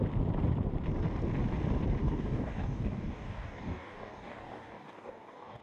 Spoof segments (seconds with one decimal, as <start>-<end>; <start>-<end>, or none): 2.0-5.6